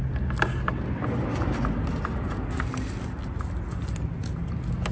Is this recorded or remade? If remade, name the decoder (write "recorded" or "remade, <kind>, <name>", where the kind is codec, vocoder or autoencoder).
recorded